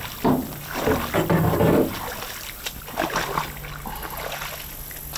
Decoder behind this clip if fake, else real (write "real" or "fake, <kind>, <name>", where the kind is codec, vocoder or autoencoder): real